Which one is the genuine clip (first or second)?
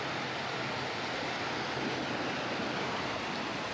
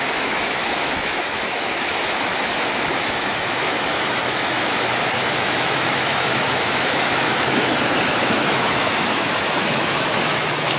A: first